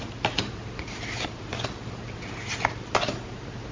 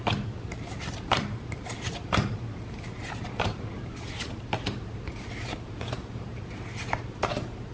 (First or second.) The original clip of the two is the first